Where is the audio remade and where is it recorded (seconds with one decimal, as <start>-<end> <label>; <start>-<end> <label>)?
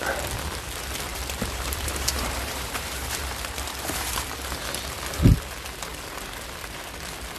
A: 0.0-1.1 recorded; 1.1-4.1 remade; 4.1-7.4 recorded